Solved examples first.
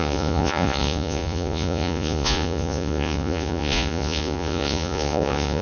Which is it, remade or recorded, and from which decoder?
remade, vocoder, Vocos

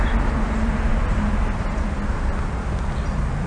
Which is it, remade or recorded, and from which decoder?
recorded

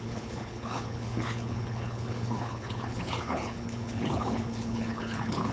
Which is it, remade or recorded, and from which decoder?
remade, codec, HILCodec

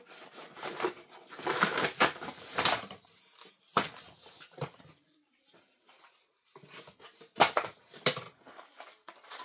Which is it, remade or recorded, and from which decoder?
remade, vocoder, BigVGAN v2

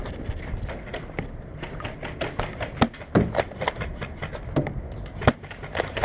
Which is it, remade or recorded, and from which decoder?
recorded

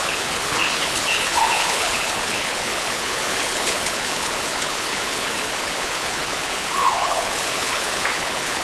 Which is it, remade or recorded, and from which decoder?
remade, codec, HILCodec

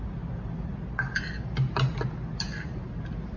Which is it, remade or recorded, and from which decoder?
recorded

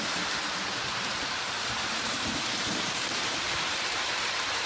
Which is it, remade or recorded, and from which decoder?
remade, vocoder, BigVGAN v2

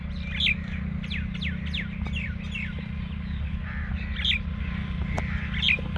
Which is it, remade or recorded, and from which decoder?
recorded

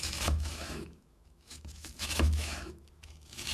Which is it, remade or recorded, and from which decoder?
remade, autoencoder, DAC-VAE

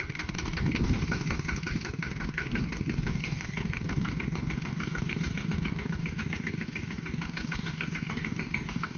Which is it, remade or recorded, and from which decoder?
remade, codec, DAC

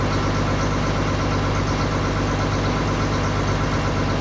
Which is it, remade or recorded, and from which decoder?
recorded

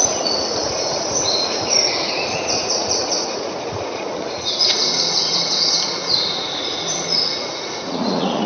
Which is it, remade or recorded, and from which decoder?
remade, vocoder, Vocos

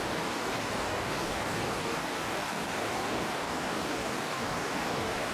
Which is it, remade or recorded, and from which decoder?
remade, codec, DAC